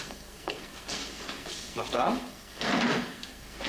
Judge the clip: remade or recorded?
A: remade